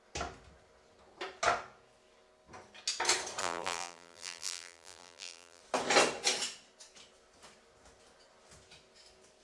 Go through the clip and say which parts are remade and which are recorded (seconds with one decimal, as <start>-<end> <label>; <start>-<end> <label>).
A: 0.0-3.4 recorded; 3.4-5.6 remade; 5.6-9.4 recorded